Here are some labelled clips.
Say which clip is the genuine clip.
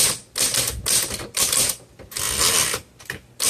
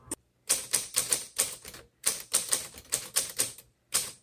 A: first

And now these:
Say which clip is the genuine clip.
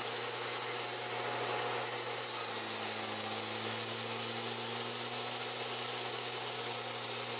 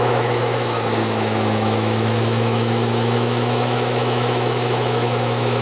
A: first